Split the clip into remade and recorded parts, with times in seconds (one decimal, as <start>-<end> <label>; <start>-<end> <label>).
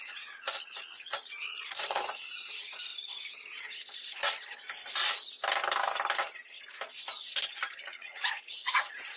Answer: 0.0-2.9 remade; 2.9-7.8 recorded; 7.8-9.2 remade